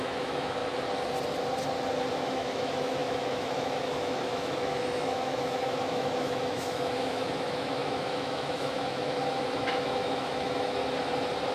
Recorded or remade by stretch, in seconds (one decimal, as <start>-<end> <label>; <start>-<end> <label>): 0.0-0.6 remade; 0.6-2.1 recorded; 2.1-10.8 remade; 10.8-11.5 recorded